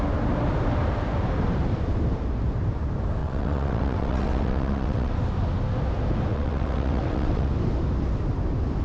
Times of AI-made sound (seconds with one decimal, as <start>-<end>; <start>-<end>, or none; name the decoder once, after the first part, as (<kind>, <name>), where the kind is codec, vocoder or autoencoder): 3.2-5.1 (vocoder, WaveNeXt); 6.3-7.5

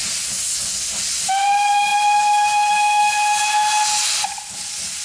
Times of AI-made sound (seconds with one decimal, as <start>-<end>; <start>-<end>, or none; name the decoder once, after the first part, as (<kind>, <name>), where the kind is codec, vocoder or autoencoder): none